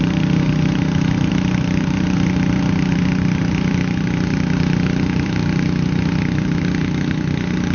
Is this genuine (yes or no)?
no